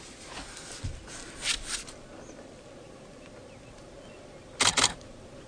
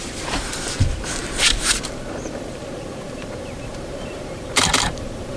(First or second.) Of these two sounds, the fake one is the second